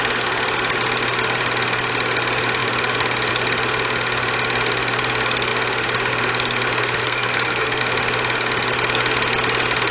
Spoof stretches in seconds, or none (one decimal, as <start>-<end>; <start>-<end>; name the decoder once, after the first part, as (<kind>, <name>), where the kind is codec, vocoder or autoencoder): 7.0-7.8 (codec, SNAC)